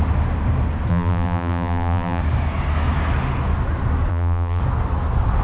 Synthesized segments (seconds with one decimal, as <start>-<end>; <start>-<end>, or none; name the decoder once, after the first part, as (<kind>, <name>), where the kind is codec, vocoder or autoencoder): 0.9-2.2 (vocoder, BigVGAN v2); 4.1-4.6